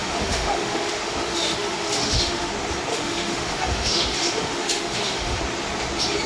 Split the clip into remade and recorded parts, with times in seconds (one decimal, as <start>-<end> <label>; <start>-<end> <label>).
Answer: 0.0-2.5 remade; 2.5-2.9 recorded; 2.9-5.4 remade; 5.4-6.3 recorded